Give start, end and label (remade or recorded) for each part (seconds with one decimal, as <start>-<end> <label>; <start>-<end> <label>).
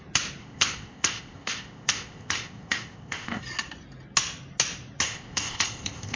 0.0-0.4 recorded; 0.4-3.4 remade; 3.4-5.0 recorded; 5.0-6.2 remade